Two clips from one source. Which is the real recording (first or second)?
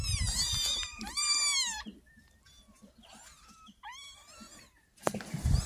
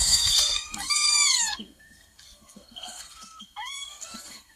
first